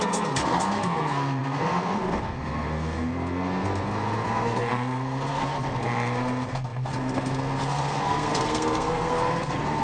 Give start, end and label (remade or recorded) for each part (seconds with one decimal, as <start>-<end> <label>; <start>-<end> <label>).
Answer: 0.0-9.8 remade